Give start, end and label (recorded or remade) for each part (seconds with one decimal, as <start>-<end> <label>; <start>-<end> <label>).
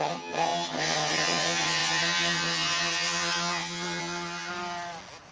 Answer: 0.0-4.5 remade; 4.5-5.3 recorded